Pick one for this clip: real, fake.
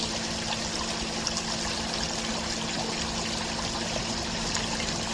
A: real